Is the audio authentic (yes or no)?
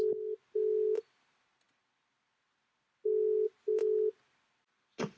yes